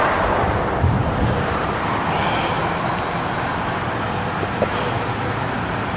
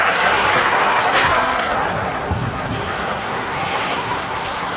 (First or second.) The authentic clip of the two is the first